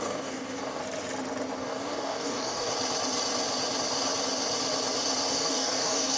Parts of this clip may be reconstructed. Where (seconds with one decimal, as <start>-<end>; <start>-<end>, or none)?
0.0-0.8; 1.6-2.7; 5.3-6.2